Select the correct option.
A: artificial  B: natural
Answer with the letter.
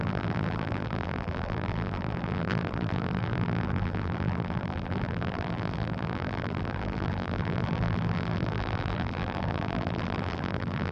A